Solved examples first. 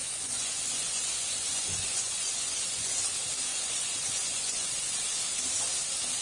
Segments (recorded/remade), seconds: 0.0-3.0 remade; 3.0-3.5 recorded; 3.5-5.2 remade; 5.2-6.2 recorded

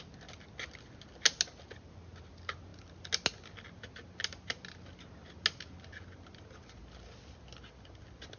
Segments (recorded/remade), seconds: 0.0-8.4 recorded

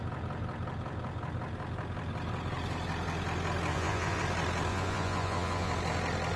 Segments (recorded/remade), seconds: 0.0-3.7 recorded; 3.7-4.2 remade; 4.2-4.7 recorded; 4.7-5.7 remade; 5.7-6.4 recorded

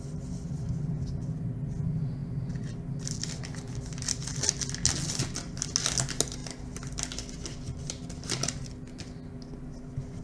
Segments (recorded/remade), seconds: 0.0-10.2 recorded